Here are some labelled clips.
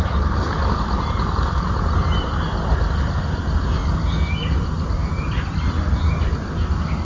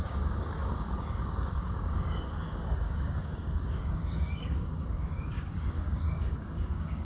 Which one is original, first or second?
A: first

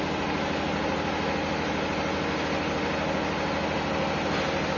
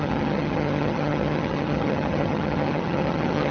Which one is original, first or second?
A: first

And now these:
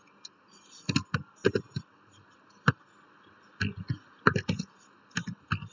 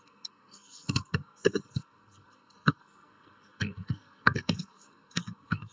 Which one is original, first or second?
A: first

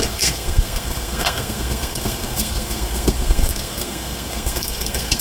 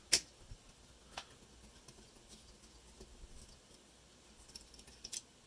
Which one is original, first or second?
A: second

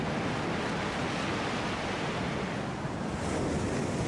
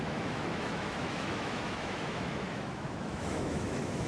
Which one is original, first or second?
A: first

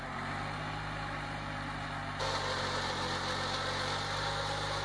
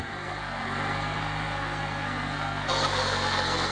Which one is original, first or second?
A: first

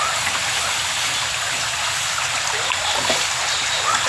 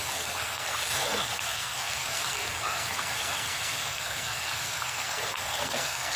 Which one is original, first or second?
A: first